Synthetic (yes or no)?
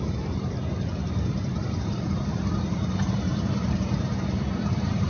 yes